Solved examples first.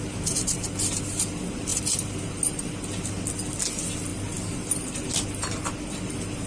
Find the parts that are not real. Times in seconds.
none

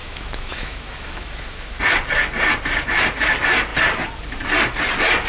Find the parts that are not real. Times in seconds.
0.0-1.8 (autoencoder, DAC-VAE)

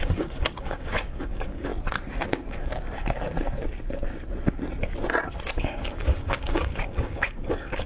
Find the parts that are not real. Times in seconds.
0.0-1.7 (codec, DAC); 5.5-7.9

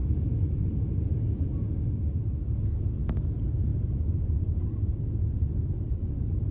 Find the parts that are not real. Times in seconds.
0.6-6.5 (vocoder, BigVGAN v2)

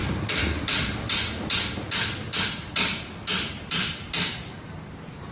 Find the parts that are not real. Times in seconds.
0.0-1.4 (vocoder, BigVGAN v2)

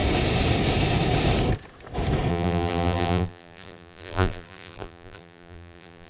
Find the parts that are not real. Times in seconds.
2.3-6.1 (vocoder, BigVGAN v2)

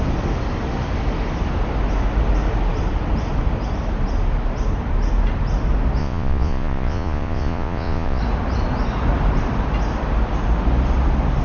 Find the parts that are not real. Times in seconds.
6.0-8.2 (vocoder, Vocos)